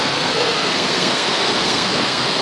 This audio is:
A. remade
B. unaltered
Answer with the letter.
A